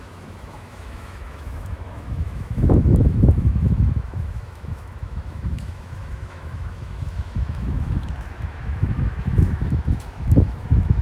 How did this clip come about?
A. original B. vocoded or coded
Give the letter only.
B